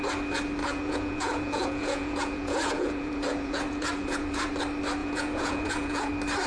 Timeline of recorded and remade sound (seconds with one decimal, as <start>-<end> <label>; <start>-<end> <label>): 0.0-0.6 recorded; 0.6-4.5 remade; 4.5-5.0 recorded; 5.0-6.1 remade; 6.1-6.5 recorded